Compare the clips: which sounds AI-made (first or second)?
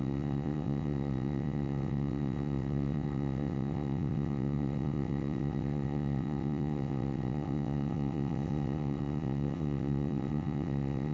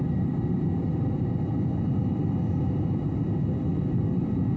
first